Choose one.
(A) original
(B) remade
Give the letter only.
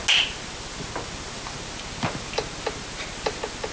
A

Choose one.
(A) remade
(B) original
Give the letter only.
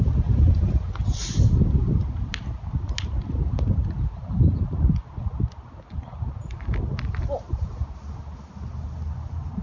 B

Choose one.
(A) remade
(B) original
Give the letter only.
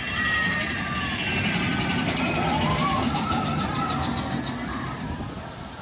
B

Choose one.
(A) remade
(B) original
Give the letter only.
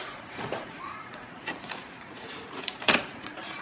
A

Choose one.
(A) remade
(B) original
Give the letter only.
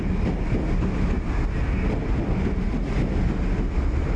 B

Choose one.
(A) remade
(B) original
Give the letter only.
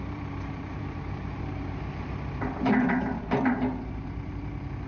A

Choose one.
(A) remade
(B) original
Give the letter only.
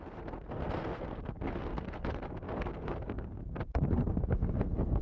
A